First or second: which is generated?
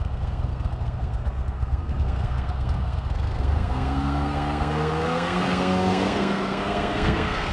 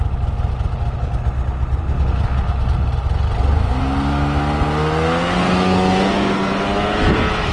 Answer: first